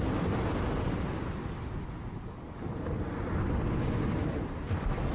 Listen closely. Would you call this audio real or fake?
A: real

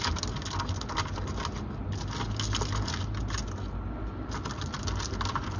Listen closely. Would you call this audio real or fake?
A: real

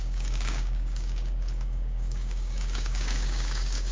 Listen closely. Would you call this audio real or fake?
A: fake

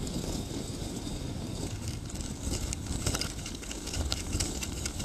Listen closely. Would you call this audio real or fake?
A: fake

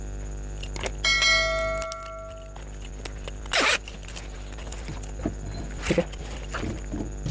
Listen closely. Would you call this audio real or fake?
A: real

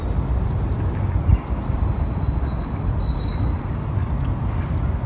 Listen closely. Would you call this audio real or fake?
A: real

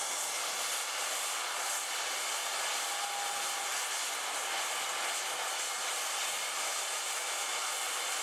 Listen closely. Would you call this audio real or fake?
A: real